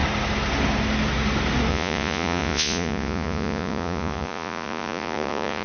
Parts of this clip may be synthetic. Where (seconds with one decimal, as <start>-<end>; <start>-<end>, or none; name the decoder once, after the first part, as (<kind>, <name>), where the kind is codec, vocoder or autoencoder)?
1.7-5.6 (vocoder, Vocos)